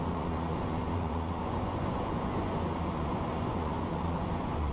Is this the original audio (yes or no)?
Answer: no